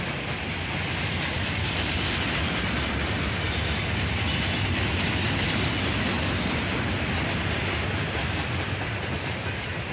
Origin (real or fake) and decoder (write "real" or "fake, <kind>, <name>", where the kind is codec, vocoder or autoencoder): real